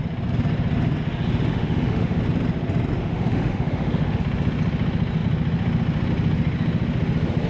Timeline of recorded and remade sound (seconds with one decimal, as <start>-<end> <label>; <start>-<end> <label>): 0.0-1.5 recorded; 1.5-2.2 remade; 2.2-3.0 recorded; 3.0-4.2 remade; 4.2-7.5 recorded